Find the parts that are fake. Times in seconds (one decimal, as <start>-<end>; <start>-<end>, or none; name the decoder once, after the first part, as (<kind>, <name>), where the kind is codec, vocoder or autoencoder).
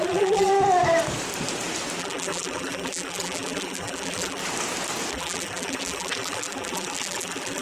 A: 0.0-0.5 (vocoder, BigVGAN v2); 2.0-4.4; 5.1-7.6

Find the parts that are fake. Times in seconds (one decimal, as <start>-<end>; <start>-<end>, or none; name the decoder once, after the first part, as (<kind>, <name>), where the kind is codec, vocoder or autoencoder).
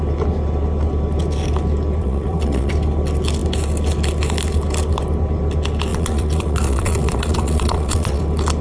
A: 2.0-2.7 (vocoder, Vocos); 5.9-8.2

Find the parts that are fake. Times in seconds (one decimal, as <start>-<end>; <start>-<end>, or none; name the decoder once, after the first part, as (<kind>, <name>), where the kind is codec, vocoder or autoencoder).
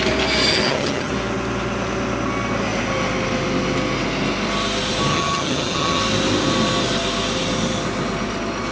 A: 0.5-1.1 (vocoder, HiFi-GAN); 5.1-6.0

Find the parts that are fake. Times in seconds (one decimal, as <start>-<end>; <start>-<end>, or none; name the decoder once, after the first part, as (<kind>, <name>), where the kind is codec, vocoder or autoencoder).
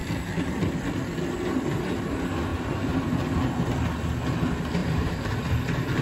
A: 2.5-3.7 (vocoder, BigVGAN v2); 4.8-5.4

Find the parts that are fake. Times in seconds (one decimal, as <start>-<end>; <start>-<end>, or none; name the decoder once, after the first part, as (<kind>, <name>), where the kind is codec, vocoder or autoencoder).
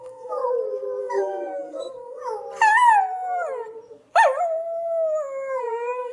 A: 0.0-0.4 (codec, SNAC); 1.0-2.2; 5.6-6.1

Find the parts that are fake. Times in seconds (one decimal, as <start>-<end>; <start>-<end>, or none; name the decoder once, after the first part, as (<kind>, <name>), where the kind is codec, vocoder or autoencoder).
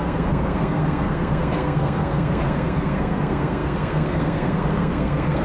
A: 0.0-5.4 (codec, SNAC)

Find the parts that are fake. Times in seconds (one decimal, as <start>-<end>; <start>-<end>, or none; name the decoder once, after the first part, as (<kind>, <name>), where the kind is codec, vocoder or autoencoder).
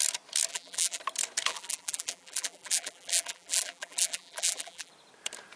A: 0.5-1.0 (vocoder, BigVGAN v2); 1.5-4.9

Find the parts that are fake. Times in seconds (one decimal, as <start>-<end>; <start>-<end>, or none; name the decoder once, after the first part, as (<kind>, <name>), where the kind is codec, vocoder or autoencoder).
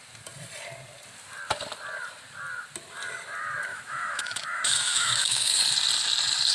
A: 3.7-5.6 (autoencoder, DAC-VAE)